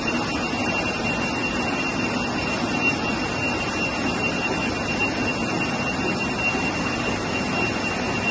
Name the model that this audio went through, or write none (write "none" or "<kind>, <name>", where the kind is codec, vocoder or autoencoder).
none